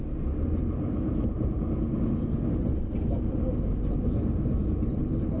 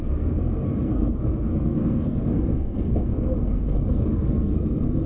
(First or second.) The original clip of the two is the first